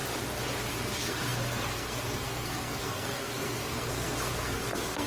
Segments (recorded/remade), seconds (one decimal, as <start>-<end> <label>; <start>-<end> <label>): 0.0-0.7 recorded; 0.7-5.1 remade